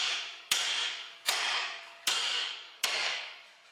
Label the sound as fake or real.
fake